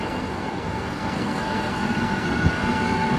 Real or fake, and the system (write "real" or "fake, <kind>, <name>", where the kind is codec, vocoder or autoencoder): fake, codec, SNAC